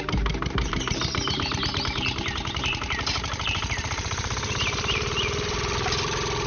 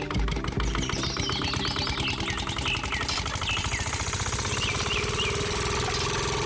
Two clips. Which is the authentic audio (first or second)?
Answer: second